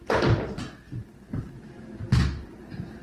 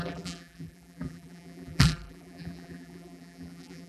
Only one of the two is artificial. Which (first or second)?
second